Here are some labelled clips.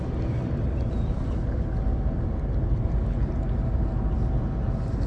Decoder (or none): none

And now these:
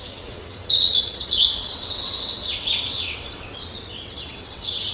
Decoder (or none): vocoder, WaveNeXt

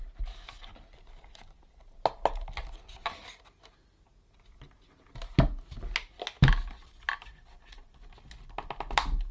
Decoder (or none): none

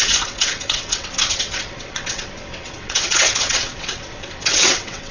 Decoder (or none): vocoder, WaveNeXt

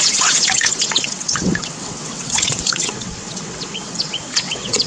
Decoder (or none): vocoder, WaveNeXt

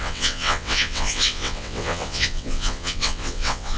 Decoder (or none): vocoder, WaveNeXt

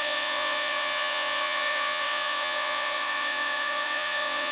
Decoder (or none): vocoder, WaveNeXt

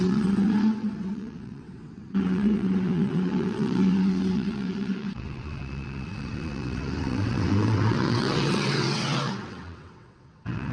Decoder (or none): vocoder, WaveNeXt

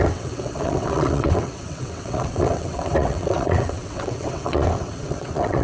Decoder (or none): vocoder, WaveNeXt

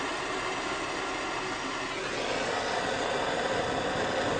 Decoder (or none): none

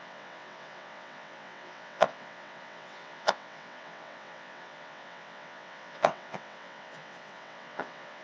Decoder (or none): vocoder, WaveNeXt